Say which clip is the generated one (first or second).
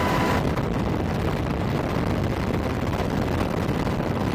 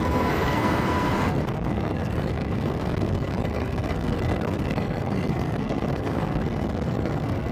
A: second